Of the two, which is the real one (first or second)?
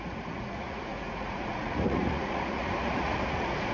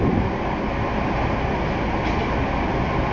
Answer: second